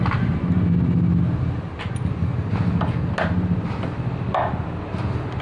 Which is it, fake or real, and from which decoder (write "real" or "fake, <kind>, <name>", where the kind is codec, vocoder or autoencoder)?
real